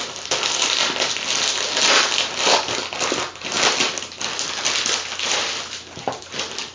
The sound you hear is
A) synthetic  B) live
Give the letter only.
B